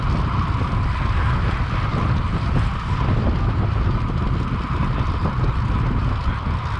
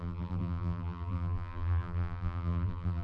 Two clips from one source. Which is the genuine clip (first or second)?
first